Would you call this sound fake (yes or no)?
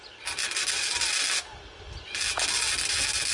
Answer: no